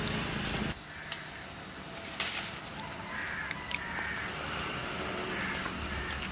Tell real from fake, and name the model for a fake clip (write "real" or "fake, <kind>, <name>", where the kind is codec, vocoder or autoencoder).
real